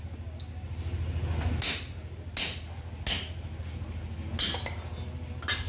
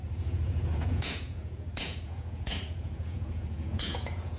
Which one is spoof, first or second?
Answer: second